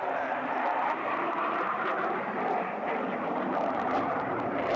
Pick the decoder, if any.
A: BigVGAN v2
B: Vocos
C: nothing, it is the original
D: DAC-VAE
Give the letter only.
A